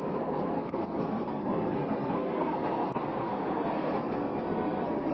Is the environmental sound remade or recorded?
remade